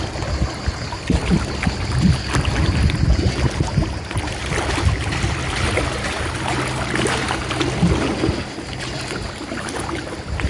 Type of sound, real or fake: real